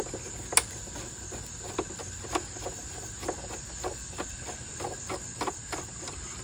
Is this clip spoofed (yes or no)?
no